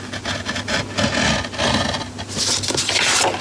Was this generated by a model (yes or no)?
no